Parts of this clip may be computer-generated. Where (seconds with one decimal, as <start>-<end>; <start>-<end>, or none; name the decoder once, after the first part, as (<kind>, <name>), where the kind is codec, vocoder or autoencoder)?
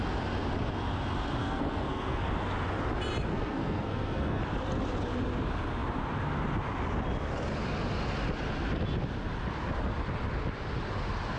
1.4-2.3 (codec, SNAC); 3.3-4.4